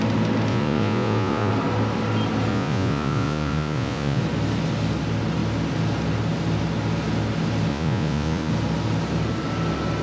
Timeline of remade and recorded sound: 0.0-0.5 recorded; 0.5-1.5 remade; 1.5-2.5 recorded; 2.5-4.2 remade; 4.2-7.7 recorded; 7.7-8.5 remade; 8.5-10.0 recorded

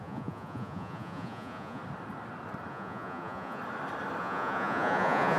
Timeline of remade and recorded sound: 0.0-1.8 remade; 1.8-2.7 recorded; 2.7-3.6 remade; 3.6-4.2 recorded; 4.2-5.4 remade

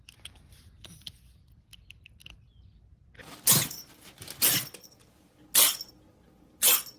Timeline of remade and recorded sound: 0.0-7.0 recorded